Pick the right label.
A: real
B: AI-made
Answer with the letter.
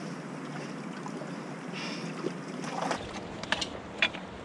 A